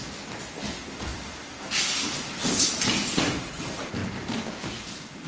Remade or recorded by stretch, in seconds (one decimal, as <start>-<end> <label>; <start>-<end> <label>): 0.0-5.3 recorded